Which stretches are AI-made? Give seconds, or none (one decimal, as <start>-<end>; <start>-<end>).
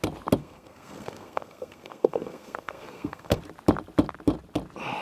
0.4-3.4